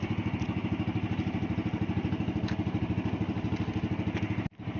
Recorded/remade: recorded